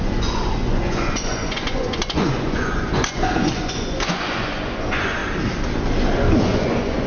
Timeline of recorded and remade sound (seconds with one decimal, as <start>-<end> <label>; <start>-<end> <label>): 0.0-5.2 remade; 5.2-6.4 recorded; 6.4-7.1 remade